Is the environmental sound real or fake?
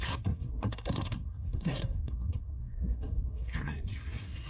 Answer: fake